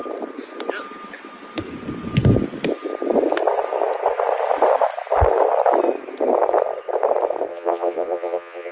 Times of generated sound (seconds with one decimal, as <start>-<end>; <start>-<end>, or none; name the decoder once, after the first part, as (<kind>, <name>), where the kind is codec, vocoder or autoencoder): 7.5-8.7 (vocoder, Vocos)